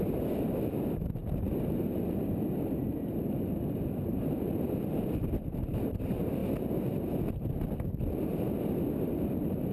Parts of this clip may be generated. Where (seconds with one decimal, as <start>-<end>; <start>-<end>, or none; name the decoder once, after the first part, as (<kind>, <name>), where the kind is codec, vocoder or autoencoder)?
0.0-6.4 (vocoder, BigVGAN v2); 8.6-9.7